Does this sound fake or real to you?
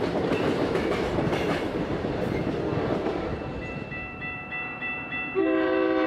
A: fake